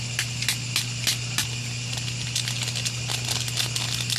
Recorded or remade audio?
recorded